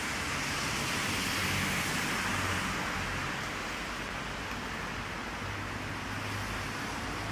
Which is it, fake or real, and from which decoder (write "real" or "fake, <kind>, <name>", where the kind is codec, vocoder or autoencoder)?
real